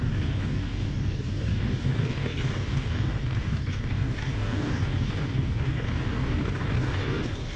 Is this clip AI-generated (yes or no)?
yes